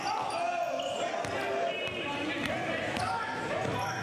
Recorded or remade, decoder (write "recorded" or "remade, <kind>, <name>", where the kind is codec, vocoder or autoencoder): recorded